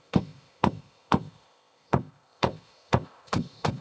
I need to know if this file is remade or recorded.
remade